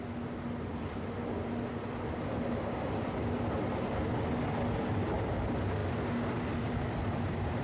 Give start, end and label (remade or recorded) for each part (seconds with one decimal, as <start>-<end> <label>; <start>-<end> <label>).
0.0-7.6 recorded